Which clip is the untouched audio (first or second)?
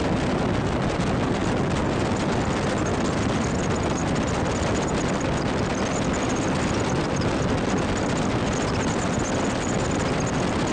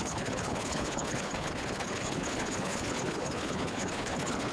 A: first